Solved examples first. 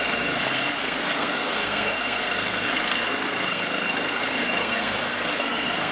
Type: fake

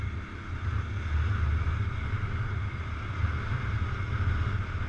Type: real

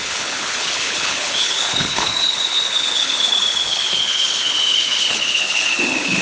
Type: fake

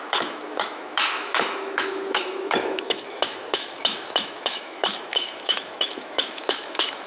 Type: fake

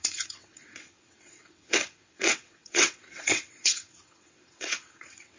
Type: fake